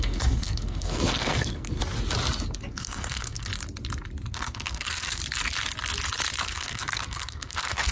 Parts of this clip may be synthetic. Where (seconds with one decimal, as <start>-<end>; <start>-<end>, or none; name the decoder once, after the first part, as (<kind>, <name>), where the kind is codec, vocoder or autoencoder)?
0.0-1.8 (codec, SNAC); 2.7-3.5; 4.3-5.2; 6.4-7.9

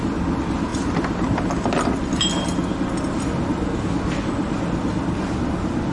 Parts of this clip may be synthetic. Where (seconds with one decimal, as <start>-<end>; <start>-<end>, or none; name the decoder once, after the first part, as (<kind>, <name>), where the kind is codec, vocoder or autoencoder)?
none

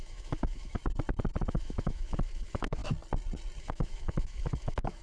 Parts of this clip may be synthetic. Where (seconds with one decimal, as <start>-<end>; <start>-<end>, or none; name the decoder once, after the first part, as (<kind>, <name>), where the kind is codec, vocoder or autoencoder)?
0.0-0.8 (autoencoder, DAC-VAE); 1.5-2.8; 3.6-5.0

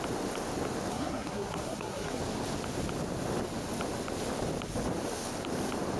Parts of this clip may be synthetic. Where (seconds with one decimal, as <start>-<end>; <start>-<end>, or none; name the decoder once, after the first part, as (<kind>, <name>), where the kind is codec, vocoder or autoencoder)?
0.9-2.2 (codec, SNAC)

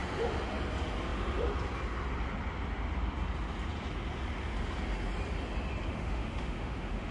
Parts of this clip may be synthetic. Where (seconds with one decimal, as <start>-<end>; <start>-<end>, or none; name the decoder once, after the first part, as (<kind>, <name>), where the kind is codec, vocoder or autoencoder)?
5.9-7.1 (autoencoder, DAC-VAE)

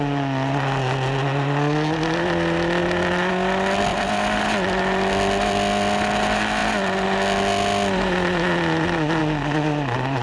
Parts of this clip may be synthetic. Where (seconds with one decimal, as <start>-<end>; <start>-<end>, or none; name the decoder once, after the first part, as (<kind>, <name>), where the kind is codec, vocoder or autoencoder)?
3.9-4.4 (vocoder, BigVGAN v2)